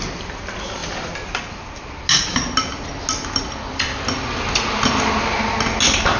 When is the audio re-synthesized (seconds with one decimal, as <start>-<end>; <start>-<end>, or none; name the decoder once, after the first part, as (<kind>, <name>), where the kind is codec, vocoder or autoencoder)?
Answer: none